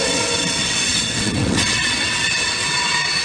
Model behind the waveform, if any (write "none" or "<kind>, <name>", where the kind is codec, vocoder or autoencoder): vocoder, WaveNeXt